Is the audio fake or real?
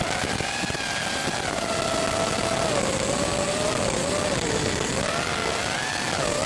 real